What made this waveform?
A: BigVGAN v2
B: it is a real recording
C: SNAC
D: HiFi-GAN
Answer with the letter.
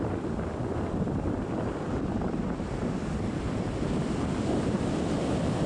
B